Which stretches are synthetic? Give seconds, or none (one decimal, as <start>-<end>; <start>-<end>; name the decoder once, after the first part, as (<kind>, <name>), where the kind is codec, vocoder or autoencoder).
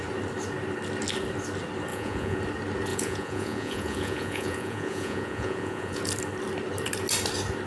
1.9-2.4 (vocoder, Vocos); 2.9-6.0